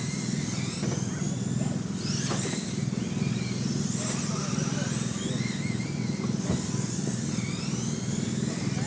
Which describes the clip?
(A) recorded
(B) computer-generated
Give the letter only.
A